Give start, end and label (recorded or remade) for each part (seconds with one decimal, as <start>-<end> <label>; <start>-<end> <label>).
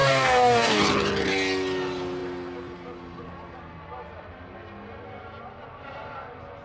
0.0-0.8 remade; 0.8-6.6 recorded